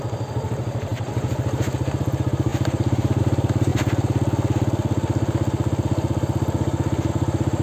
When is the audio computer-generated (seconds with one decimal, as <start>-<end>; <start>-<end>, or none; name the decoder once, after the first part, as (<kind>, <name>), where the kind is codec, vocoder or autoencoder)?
0.0-3.7 (vocoder, BigVGAN v2); 7.1-7.6